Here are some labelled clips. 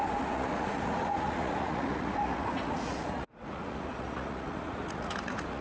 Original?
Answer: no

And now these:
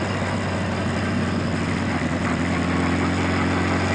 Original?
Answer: yes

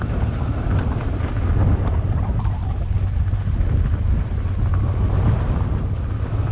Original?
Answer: yes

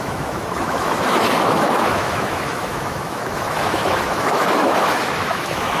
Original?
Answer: no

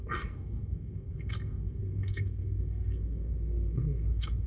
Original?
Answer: no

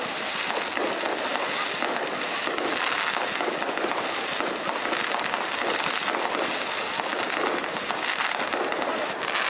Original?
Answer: yes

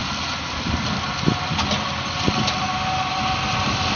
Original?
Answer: yes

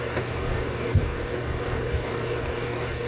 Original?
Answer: no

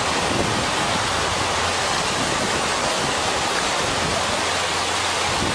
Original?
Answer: yes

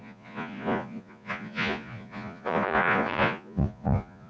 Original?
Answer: no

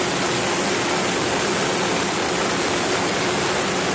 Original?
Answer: yes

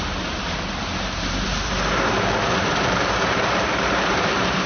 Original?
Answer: no